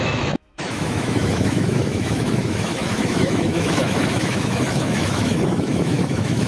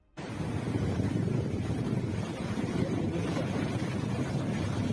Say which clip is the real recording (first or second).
second